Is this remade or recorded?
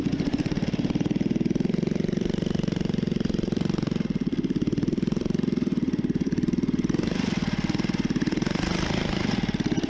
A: remade